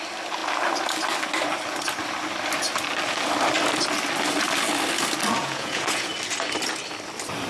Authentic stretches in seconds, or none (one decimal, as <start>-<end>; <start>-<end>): 0.0-5.4; 6.1-7.5